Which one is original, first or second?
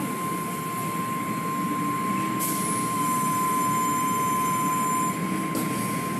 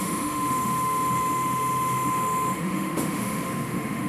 first